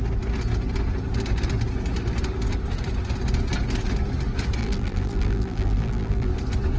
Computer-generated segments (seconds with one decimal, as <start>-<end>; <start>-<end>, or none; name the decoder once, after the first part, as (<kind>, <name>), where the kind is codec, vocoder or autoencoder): 4.6-6.3 (vocoder, BigVGAN v2)

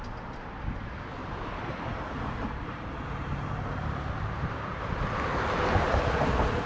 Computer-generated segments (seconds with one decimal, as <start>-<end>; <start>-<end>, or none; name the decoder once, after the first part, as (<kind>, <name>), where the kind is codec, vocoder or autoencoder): 1.2-5.1 (vocoder, BigVGAN v2)